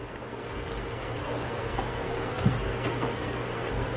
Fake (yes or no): yes